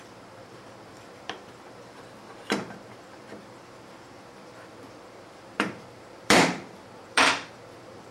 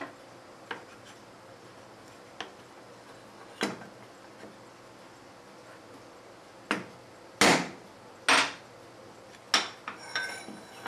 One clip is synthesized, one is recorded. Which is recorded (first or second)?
second